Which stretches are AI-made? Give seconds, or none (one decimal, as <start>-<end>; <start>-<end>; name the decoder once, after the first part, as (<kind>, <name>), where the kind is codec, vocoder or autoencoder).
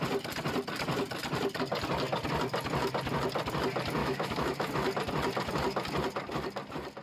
4.0-4.7 (autoencoder, DAC-VAE)